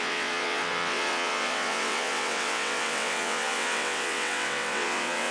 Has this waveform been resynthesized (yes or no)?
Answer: yes